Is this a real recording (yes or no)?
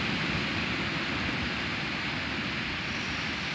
yes